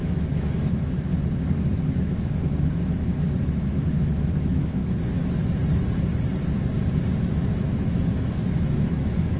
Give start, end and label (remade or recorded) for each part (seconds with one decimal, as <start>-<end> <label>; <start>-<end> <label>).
0.0-1.1 remade; 1.1-2.0 recorded; 2.0-4.8 remade; 4.8-7.1 recorded; 7.1-9.4 remade